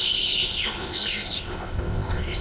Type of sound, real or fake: fake